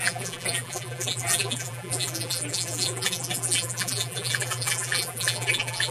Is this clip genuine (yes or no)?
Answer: no